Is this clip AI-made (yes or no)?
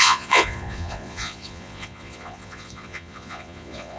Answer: yes